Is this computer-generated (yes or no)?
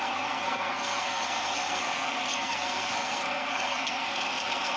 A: yes